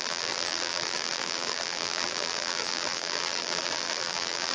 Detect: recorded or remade remade